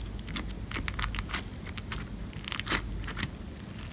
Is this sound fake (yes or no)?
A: no